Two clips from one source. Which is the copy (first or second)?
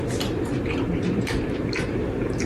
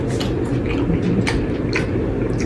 first